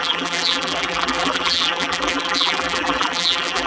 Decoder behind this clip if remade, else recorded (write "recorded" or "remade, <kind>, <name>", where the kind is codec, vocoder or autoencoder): remade, vocoder, BigVGAN v2